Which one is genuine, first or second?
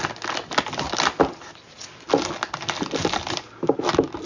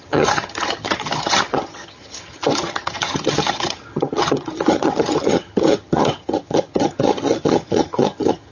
first